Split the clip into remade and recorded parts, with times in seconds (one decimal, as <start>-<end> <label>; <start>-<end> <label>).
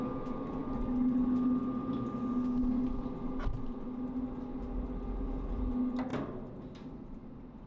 0.0-7.7 recorded